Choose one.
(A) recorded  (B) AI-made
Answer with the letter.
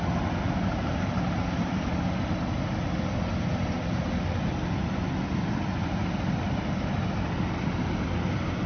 A